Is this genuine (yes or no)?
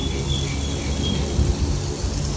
yes